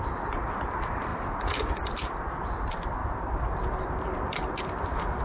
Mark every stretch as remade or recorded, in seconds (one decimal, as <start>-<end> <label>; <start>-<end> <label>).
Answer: 0.0-1.1 recorded; 1.1-1.8 remade; 1.8-3.0 recorded; 3.0-5.2 remade